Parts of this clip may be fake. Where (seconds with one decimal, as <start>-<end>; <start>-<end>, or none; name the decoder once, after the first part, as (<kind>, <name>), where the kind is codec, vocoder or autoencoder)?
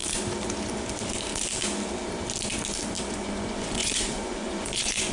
3.1-5.1 (vocoder, Vocos)